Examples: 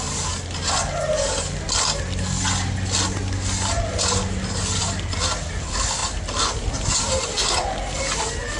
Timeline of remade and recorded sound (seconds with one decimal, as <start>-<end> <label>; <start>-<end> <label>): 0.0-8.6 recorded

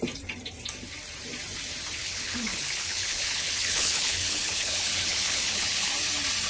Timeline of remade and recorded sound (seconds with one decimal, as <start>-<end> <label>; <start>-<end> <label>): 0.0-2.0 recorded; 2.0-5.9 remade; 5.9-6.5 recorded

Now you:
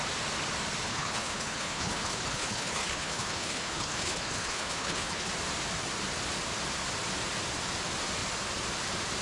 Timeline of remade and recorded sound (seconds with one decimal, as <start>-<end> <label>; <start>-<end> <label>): 0.0-0.9 recorded; 0.9-5.3 remade; 5.3-9.2 recorded